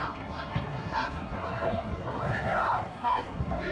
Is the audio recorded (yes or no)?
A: no